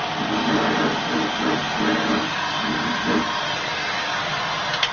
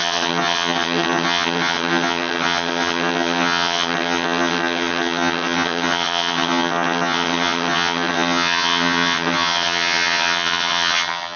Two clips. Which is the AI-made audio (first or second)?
second